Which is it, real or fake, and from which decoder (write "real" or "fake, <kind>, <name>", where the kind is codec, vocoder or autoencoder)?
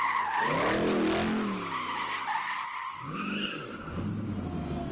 real